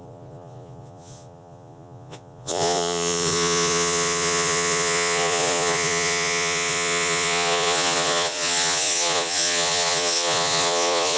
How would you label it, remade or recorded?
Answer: remade